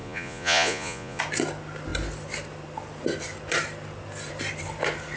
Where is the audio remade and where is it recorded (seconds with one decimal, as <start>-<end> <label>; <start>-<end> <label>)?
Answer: 0.0-1.2 remade; 1.2-5.2 recorded